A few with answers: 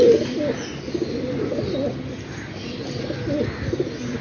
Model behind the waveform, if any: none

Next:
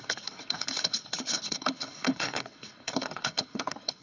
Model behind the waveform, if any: codec, HILCodec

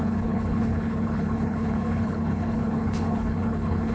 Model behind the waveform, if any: codec, HILCodec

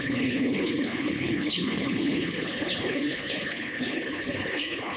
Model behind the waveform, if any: codec, HILCodec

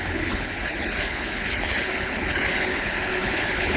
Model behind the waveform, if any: codec, HILCodec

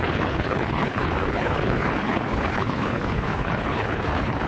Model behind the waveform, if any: codec, HILCodec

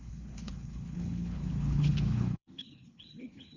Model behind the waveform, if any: codec, HILCodec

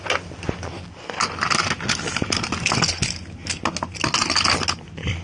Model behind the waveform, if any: none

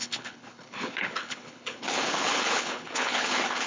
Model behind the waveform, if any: codec, HILCodec